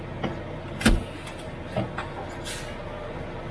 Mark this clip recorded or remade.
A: recorded